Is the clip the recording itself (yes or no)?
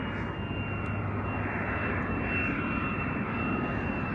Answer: yes